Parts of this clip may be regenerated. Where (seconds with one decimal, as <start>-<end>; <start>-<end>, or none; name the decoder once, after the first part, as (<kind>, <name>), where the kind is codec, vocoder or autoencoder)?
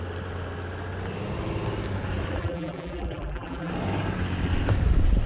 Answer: 2.4-3.7 (vocoder, BigVGAN v2)